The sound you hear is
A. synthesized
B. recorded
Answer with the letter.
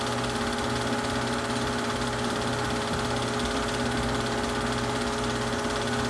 B